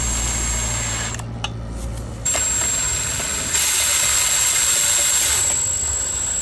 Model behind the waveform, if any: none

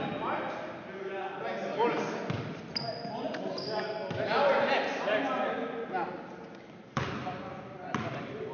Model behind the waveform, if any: none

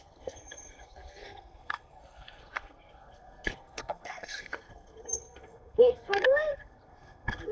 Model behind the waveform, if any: codec, SNAC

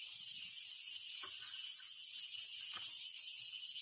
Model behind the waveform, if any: none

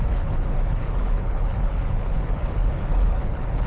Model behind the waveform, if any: codec, HILCodec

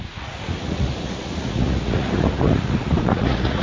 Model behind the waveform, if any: vocoder, Vocos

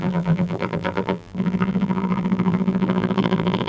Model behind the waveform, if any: vocoder, BigVGAN v2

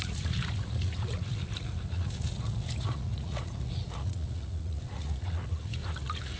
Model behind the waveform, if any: vocoder, Vocos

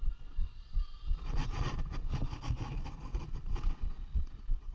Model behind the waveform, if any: vocoder, Vocos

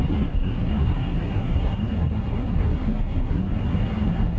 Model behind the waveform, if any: codec, SNAC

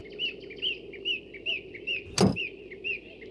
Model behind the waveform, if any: none